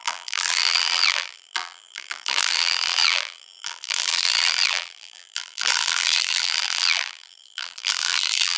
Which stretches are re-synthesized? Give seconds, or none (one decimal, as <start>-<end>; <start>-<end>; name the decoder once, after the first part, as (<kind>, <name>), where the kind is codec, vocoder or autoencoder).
0.0-8.6 (vocoder, BigVGAN v2)

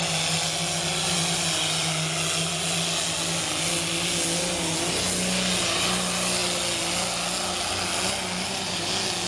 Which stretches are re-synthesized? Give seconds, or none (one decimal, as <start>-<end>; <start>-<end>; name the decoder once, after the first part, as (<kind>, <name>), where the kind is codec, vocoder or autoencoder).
none